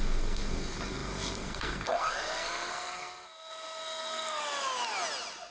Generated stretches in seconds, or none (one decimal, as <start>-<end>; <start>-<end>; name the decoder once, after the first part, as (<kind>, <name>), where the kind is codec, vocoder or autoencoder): 0.0-4.4 (codec, SNAC)